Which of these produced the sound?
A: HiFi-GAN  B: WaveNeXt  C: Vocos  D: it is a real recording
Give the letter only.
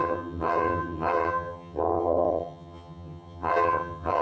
A